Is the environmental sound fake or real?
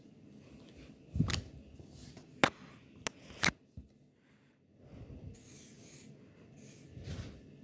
real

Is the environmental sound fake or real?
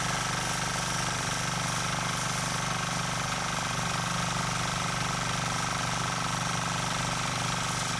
real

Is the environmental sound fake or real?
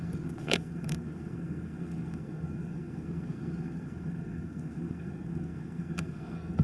fake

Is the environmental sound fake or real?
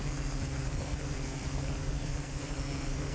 fake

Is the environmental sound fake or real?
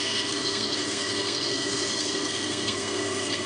fake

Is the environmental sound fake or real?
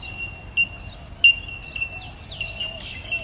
real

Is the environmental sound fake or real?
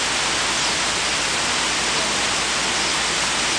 real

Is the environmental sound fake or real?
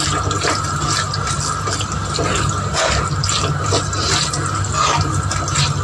real